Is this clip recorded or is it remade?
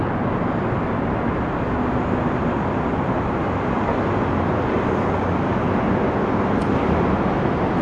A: recorded